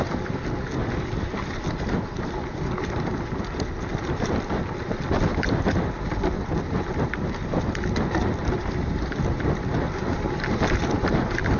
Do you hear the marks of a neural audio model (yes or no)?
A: yes